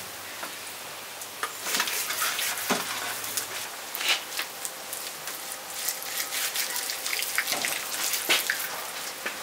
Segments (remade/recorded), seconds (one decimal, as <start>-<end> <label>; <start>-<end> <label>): 0.0-9.4 recorded